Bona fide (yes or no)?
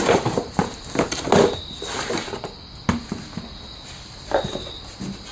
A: yes